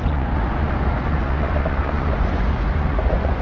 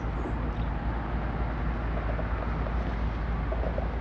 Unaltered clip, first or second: second